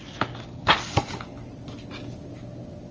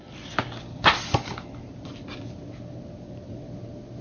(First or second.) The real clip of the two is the first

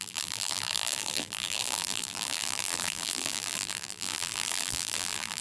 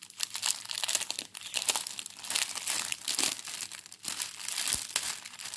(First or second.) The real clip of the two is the second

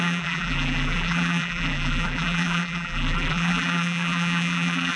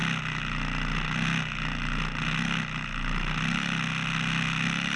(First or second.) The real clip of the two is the second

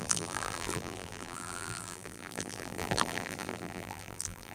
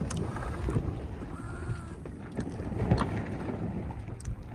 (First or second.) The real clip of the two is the second